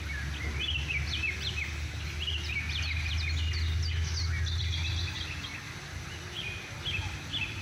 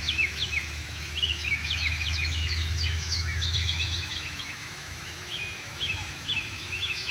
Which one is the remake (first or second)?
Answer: second